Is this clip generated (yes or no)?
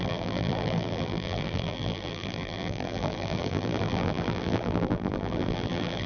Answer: yes